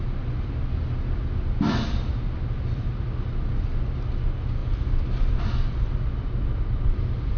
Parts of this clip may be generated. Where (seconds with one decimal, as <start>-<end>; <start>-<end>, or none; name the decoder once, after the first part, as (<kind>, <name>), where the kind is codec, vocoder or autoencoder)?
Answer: none